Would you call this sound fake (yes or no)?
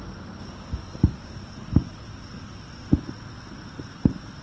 no